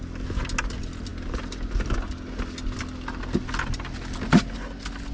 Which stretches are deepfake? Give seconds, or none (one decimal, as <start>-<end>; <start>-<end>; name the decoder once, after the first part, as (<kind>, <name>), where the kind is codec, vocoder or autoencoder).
none